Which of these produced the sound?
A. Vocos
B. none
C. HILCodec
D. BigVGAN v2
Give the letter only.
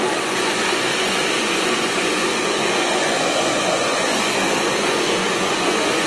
A